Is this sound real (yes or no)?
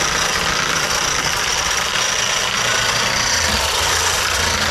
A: yes